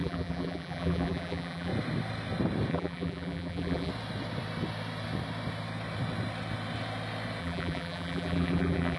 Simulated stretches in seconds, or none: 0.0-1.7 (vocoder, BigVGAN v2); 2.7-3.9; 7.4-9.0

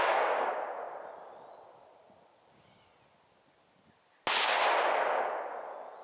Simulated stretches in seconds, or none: 0.0-0.5 (codec, DAC); 2.5-2.9